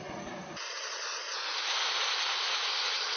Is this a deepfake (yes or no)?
no